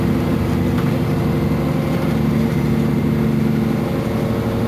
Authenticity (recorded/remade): recorded